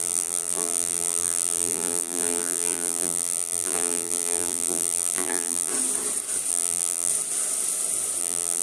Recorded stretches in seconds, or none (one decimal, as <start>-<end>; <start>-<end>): 5.7-6.5; 7.1-8.2